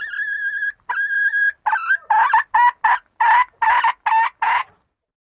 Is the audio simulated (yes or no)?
no